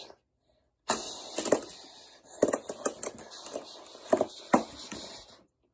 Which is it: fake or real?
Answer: real